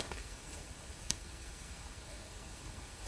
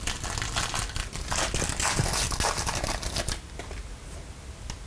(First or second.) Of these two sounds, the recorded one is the second